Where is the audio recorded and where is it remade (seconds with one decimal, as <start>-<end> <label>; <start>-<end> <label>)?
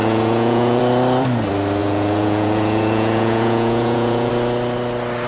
0.0-0.8 remade; 0.8-1.8 recorded; 1.8-4.3 remade; 4.3-5.3 recorded